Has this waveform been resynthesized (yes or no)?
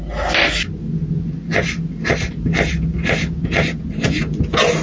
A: no